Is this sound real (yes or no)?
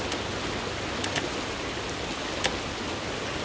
yes